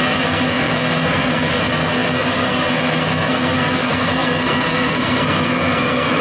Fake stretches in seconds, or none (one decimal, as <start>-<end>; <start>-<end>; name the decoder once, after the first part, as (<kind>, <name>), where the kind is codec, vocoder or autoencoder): 0.0-6.2 (codec, SNAC)